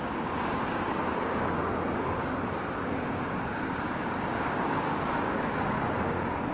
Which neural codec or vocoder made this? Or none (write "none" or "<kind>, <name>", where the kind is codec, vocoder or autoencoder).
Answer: codec, DAC